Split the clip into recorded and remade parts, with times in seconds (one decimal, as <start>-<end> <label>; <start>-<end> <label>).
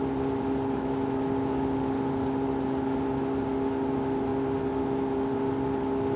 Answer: 0.0-6.2 recorded